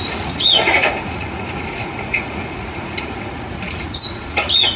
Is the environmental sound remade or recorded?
remade